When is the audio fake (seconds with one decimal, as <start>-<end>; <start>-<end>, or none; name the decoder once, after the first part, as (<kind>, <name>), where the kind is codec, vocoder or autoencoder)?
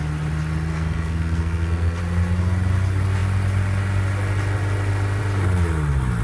0.7-2.0 (codec, SNAC)